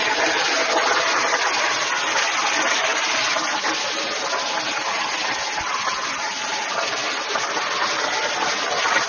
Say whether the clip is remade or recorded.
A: recorded